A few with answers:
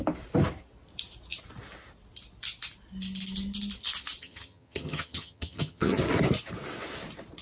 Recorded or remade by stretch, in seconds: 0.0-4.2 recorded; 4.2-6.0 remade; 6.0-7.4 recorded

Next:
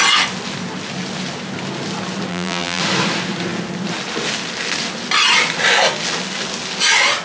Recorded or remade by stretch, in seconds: 0.0-2.3 recorded; 2.3-2.8 remade; 2.8-7.2 recorded

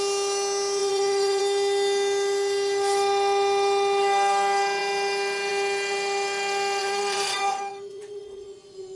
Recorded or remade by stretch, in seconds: 0.0-0.8 recorded; 0.8-1.4 remade; 1.4-6.8 recorded; 6.8-9.0 remade

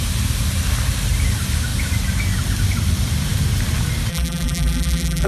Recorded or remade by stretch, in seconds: 0.0-4.1 recorded; 4.1-5.3 remade